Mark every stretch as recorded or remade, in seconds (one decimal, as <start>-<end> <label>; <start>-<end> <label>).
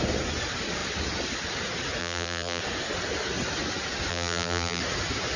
0.0-2.0 recorded; 2.0-2.6 remade; 2.6-4.1 recorded; 4.1-4.8 remade; 4.8-5.4 recorded